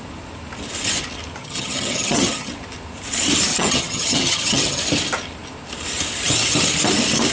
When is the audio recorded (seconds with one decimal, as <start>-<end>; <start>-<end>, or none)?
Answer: 0.0-1.4; 2.5-3.5; 4.8-7.3